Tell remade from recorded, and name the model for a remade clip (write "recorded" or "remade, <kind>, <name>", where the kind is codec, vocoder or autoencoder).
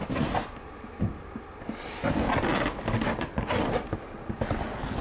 recorded